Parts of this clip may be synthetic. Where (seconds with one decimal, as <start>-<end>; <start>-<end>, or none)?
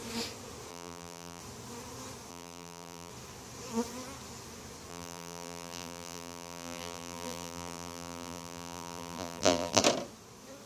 0.7-1.4; 2.3-3.1; 4.9-9.8